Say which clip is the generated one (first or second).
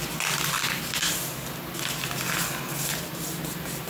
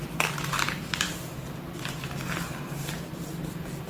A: second